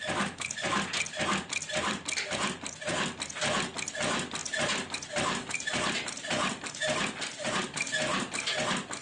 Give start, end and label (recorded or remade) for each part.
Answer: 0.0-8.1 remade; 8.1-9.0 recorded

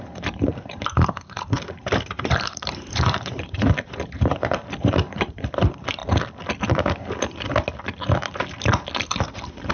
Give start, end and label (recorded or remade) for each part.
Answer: 0.0-6.0 remade; 6.0-9.7 recorded

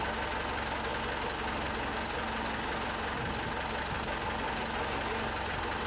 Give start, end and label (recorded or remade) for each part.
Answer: 0.0-5.9 recorded

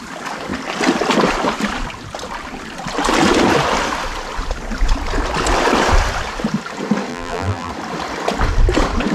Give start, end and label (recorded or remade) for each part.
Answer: 0.0-7.1 recorded; 7.1-7.7 remade; 7.7-9.1 recorded

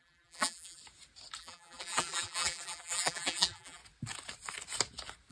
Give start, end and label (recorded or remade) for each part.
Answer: 0.0-0.8 remade; 0.8-1.4 recorded; 1.4-3.8 remade; 3.8-5.3 recorded

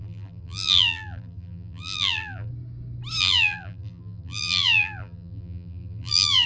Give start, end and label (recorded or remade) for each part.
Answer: 0.0-2.5 remade; 2.5-3.2 recorded; 3.2-6.5 remade

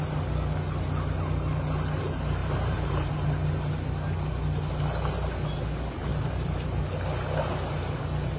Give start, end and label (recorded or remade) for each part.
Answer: 0.0-2.4 recorded; 2.4-3.1 remade; 3.1-6.1 recorded; 6.1-6.8 remade; 6.8-8.4 recorded